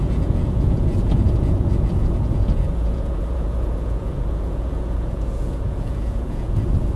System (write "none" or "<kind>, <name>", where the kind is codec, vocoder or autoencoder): vocoder, Vocos